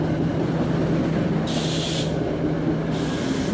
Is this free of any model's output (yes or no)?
yes